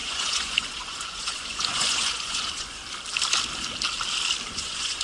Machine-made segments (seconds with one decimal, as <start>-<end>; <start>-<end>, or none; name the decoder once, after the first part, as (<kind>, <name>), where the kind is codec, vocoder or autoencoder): 0.0-2.8 (vocoder, Vocos); 4.5-5.0